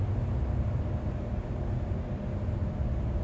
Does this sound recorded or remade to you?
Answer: remade